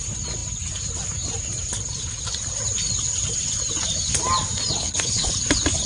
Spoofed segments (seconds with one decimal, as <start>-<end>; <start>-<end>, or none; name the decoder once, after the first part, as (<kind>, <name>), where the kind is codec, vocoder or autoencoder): 4.8-5.3 (codec, HILCodec)